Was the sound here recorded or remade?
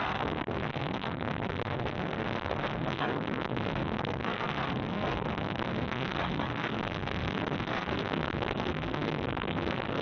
remade